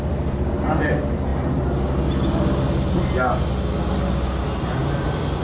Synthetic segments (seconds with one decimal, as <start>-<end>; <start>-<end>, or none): none

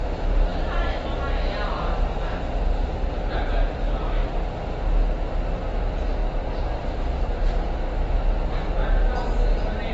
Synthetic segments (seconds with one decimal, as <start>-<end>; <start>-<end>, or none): 6.2-7.5